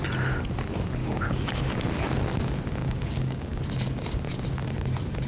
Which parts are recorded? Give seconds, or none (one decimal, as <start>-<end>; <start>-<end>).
0.0-1.0; 1.8-2.8; 3.6-5.3